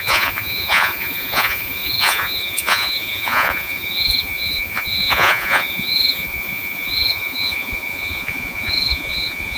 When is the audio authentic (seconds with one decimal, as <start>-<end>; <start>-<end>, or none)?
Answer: none